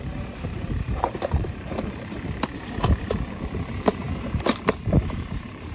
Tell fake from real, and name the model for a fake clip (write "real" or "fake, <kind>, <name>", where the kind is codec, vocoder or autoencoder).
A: fake, vocoder, BigVGAN v2